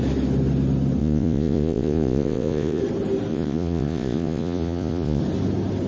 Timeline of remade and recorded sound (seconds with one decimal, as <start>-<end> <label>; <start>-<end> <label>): 0.0-1.0 recorded; 1.0-2.8 remade; 2.8-3.3 recorded; 3.3-5.2 remade; 5.2-5.9 recorded